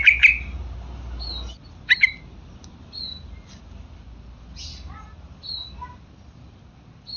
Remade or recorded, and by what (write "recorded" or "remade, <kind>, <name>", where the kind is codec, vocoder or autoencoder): recorded